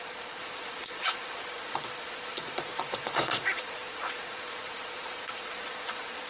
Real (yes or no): no